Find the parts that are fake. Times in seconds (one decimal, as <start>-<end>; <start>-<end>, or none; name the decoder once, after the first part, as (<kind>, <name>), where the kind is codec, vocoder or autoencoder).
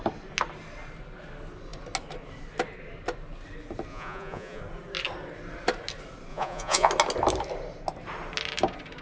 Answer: 3.9-4.6 (vocoder, Vocos); 6.3-6.9